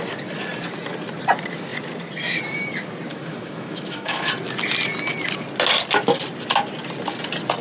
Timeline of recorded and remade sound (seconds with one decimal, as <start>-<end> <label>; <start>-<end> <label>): 0.0-3.1 recorded; 3.1-4.3 remade; 4.3-7.6 recorded